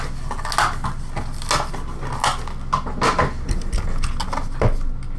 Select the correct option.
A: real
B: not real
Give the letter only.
A